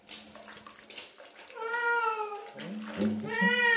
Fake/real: real